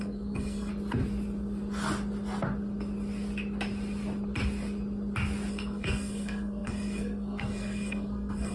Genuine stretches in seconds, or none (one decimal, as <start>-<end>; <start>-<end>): 0.7-5.5